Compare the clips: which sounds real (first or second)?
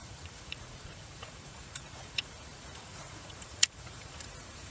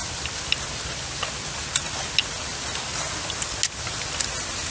second